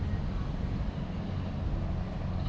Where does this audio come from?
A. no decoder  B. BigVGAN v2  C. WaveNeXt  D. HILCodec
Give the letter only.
A